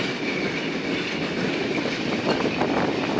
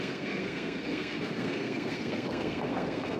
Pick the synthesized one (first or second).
second